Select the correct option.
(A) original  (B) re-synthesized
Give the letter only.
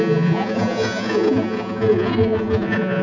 B